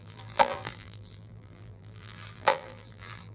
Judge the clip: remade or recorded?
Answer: remade